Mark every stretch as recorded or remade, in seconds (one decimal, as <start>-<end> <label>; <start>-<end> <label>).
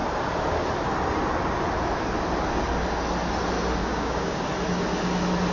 0.0-3.8 recorded; 3.8-4.4 remade; 4.4-5.5 recorded